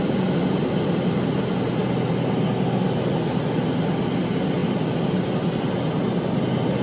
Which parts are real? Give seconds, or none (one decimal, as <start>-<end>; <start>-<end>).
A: 0.0-6.8